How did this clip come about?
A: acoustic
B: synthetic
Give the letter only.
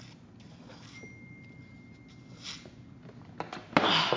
A